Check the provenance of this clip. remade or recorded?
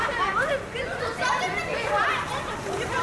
recorded